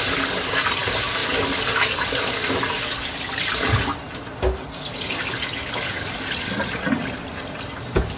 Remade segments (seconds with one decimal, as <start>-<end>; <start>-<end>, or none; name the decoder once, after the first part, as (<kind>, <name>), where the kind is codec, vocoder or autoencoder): none